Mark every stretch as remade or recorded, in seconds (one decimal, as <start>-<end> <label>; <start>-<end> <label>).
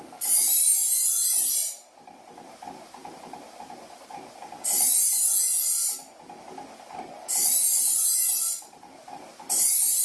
0.0-6.0 remade; 6.0-7.0 recorded; 7.0-10.0 remade